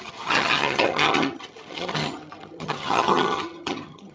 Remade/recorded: remade